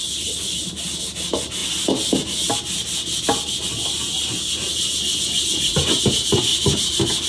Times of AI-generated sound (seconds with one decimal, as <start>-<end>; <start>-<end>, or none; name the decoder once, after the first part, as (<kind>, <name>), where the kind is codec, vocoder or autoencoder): 6.5-7.3 (vocoder, BigVGAN v2)